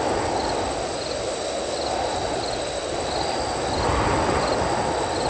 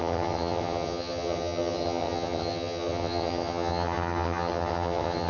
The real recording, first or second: first